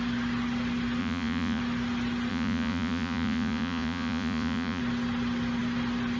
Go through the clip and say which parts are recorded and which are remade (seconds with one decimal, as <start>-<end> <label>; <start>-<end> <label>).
0.0-1.0 recorded; 1.0-1.6 remade; 1.6-2.3 recorded; 2.3-4.8 remade; 4.8-6.2 recorded